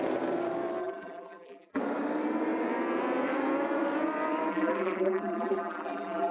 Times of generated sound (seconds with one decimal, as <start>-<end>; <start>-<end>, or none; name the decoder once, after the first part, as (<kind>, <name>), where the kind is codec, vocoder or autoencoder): 0.8-1.8 (vocoder, BigVGAN v2); 4.5-6.3